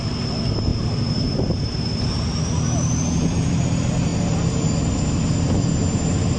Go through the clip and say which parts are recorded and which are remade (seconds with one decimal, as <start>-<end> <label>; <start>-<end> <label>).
0.0-0.7 recorded; 0.7-3.5 remade; 3.5-4.1 recorded; 4.1-4.7 remade; 4.7-6.4 recorded